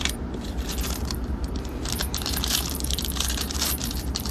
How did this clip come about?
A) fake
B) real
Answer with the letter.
A